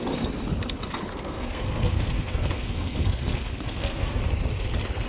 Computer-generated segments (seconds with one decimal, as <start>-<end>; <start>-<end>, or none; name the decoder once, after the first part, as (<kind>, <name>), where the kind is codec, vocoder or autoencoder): 1.1-4.2 (codec, SNAC)